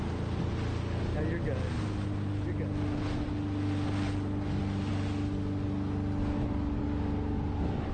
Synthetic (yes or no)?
no